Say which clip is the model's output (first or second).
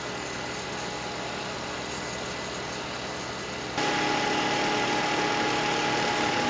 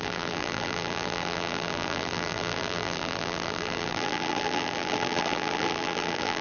second